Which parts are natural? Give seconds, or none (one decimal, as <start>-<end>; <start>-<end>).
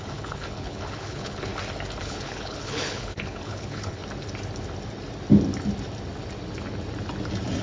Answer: 1.5-2.0; 4.0-7.6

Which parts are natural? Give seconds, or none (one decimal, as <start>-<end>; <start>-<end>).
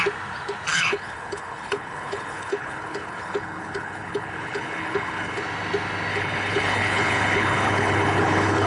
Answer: 0.0-0.7; 5.4-6.1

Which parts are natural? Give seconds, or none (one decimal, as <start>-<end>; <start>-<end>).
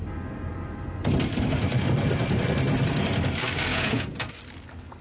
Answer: 0.0-3.7; 4.3-5.0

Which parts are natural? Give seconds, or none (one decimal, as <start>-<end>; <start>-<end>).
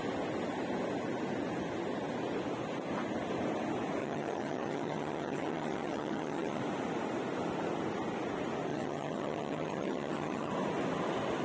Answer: 0.0-4.0; 6.6-8.7; 10.5-11.4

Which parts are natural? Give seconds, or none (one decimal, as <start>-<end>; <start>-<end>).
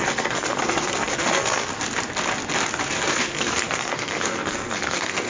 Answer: 1.7-3.1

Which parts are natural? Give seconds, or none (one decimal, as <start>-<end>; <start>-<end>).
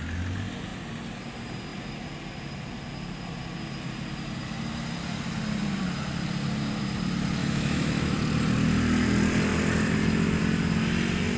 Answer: 0.0-7.4; 8.2-11.4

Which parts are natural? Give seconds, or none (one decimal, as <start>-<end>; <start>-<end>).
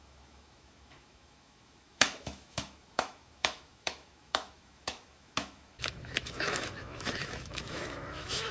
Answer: none